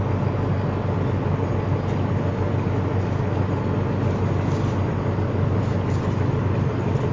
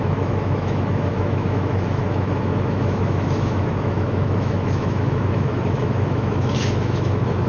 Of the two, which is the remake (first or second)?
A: second